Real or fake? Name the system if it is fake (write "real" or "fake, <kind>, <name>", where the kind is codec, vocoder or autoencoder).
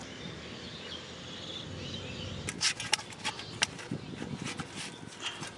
real